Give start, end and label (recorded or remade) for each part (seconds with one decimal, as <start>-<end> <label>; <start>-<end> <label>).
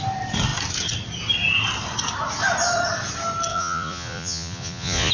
0.0-3.5 recorded; 3.5-5.1 remade